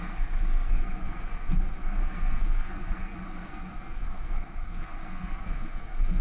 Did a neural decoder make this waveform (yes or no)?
yes